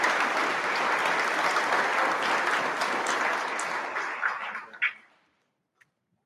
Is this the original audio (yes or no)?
yes